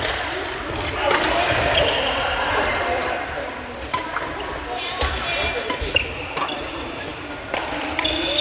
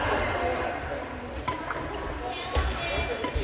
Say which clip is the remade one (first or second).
first